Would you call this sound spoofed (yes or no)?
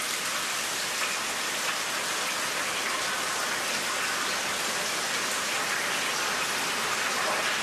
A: no